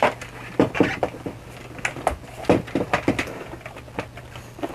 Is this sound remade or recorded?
recorded